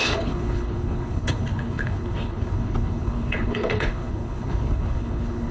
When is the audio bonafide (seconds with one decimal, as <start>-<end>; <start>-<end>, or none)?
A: none